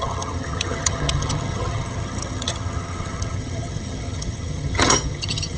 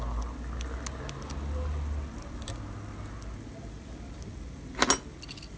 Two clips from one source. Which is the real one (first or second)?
second